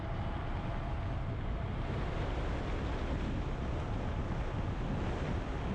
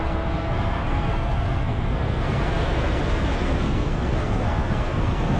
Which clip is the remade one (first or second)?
second